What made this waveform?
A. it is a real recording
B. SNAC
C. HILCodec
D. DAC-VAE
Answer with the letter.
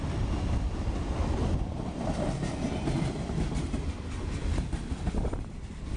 A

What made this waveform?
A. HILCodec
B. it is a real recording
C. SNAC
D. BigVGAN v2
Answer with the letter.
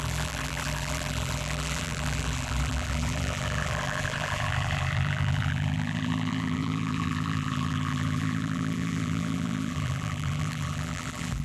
D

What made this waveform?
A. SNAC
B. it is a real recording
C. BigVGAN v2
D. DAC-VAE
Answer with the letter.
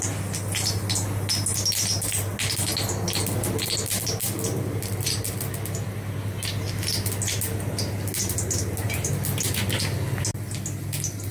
B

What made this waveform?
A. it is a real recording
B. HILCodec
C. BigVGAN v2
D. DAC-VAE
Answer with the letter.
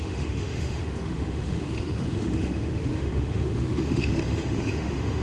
D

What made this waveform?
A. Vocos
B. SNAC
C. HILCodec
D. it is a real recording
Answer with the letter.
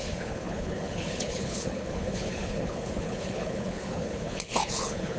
C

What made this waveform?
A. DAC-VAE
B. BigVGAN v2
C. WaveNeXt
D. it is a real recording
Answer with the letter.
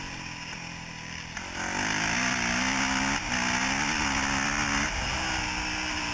D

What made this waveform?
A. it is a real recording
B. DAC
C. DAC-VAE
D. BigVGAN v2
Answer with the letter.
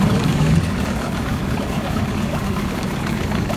B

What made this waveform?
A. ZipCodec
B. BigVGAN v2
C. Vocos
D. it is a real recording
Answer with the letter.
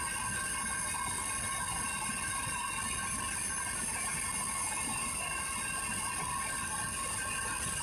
D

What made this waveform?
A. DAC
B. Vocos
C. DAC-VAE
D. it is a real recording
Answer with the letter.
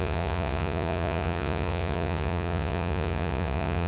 B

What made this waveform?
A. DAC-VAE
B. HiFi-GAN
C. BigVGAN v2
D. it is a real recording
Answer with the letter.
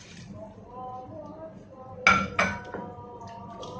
D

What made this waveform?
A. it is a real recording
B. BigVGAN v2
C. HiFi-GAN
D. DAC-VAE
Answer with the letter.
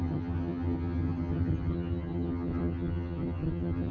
C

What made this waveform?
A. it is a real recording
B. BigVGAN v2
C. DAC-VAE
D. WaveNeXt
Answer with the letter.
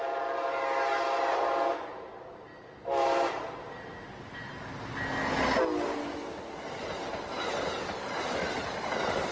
A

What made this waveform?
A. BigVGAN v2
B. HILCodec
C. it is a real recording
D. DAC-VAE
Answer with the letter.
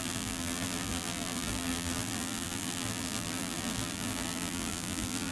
A